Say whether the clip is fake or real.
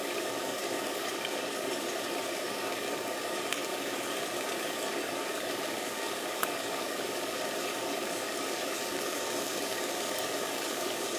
fake